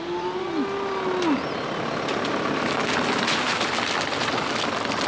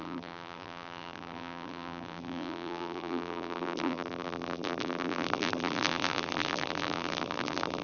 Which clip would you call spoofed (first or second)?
second